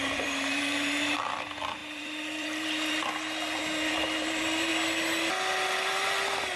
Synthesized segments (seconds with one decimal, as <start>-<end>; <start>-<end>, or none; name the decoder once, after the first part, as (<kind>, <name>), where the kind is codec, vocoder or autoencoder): 0.0-4.7 (vocoder, BigVGAN v2); 5.9-6.6